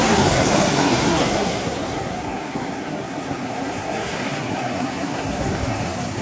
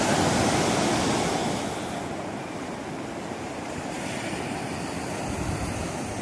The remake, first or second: first